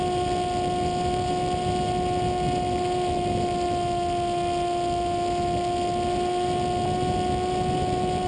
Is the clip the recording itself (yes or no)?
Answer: yes